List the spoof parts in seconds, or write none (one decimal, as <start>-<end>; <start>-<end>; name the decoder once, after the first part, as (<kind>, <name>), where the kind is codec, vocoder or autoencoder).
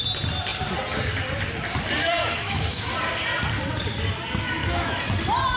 2.2-2.9 (autoencoder, DAC-VAE); 4.6-5.1